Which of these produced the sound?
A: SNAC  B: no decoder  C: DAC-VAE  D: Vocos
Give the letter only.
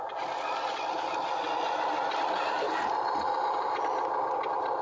B